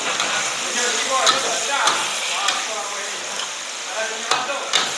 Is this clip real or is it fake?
real